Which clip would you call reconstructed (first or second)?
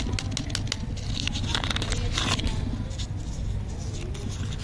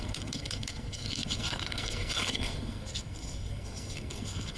second